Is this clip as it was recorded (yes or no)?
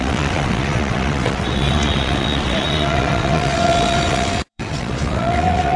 no